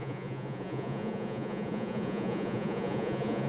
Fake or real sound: fake